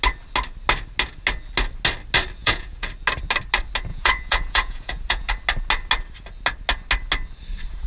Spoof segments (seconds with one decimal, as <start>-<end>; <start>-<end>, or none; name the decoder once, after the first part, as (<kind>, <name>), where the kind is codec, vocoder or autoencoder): 2.4-2.9 (vocoder, Vocos); 3.9-5.3